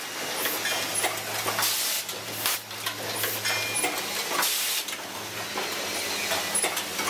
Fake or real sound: real